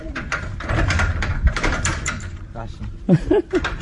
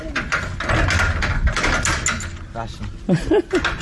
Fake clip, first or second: first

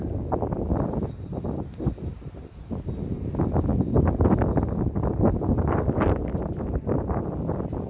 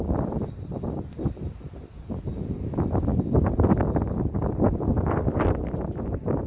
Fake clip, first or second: second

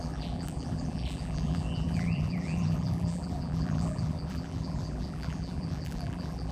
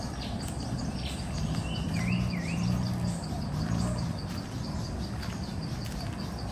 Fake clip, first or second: first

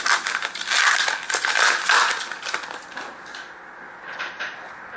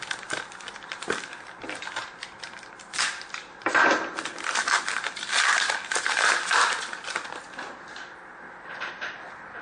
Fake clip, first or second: second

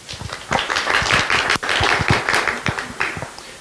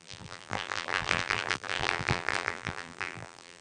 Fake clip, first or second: second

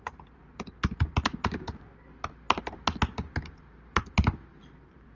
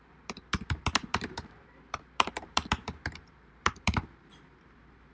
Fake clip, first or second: second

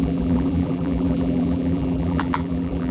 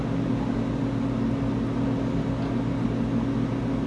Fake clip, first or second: first